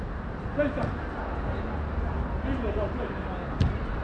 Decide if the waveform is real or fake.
real